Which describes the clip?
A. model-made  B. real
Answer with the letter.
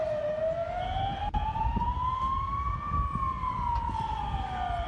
B